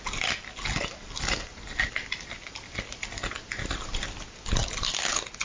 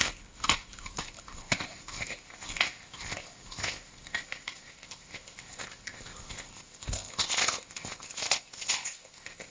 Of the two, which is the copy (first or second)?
second